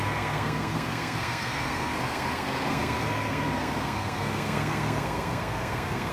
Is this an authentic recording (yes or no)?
no